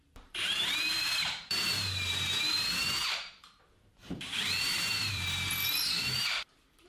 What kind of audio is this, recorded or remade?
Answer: remade